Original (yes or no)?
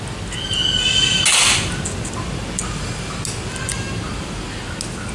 yes